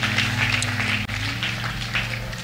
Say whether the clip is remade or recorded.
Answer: recorded